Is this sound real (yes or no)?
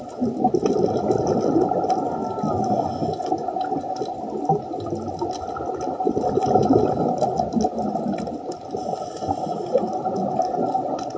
yes